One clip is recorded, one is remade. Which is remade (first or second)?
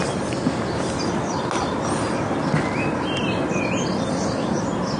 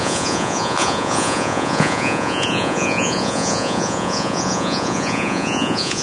second